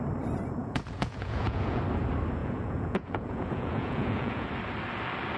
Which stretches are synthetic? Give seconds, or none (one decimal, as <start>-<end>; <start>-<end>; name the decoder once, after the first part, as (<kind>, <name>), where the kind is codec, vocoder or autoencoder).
0.6-1.8 (vocoder, Vocos); 2.4-4.5